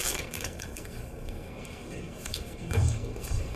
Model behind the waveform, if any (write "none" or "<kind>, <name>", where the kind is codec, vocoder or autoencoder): codec, SNAC